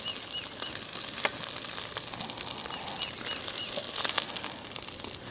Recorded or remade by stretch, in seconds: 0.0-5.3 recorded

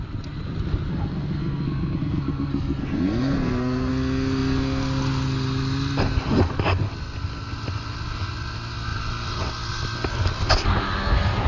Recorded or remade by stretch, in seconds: 0.0-0.9 recorded; 0.9-3.9 remade; 3.9-11.5 recorded

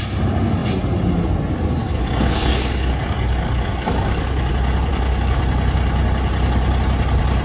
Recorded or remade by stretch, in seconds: 0.0-1.8 recorded; 1.8-4.5 remade; 4.5-4.9 recorded; 4.9-5.4 remade; 5.4-7.4 recorded

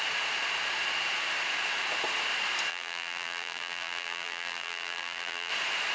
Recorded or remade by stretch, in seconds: 0.0-2.7 recorded; 2.7-5.5 remade; 5.5-5.9 recorded

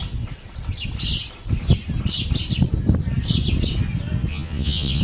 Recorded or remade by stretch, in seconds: 0.0-4.3 recorded; 4.3-5.0 remade

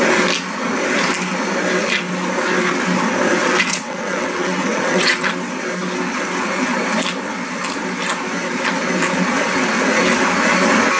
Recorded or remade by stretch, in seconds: 0.0-3.4 recorded; 3.4-5.3 remade; 5.3-11.0 recorded

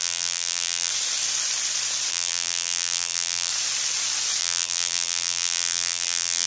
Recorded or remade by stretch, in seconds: 0.0-0.9 remade; 0.9-2.1 recorded; 2.1-3.5 remade; 3.5-4.4 recorded; 4.4-6.5 remade

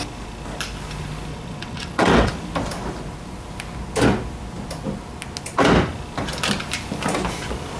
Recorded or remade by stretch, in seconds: 0.0-1.3 recorded; 1.3-2.3 remade; 2.3-7.8 recorded